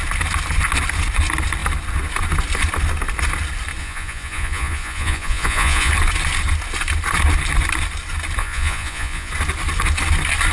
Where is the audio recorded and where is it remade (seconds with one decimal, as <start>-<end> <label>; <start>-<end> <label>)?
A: 0.0-3.8 recorded; 3.8-5.9 remade; 5.9-8.4 recorded; 8.4-9.3 remade; 9.3-10.5 recorded